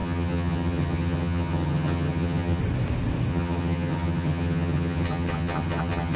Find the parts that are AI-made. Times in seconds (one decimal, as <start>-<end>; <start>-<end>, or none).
0.0-2.6; 3.3-6.2